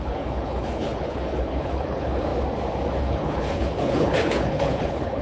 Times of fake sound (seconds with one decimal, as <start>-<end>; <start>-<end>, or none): 0.0-2.3; 3.0-5.2